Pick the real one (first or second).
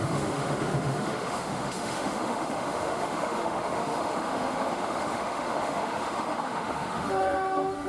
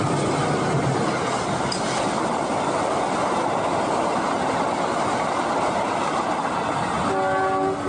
second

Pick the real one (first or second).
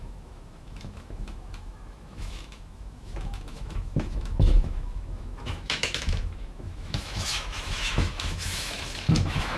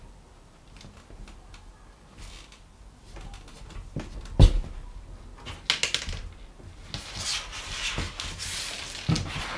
second